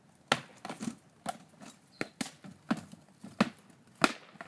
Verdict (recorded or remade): recorded